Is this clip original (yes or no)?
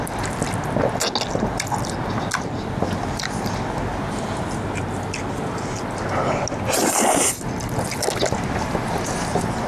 yes